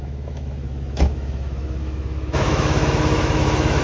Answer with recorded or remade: remade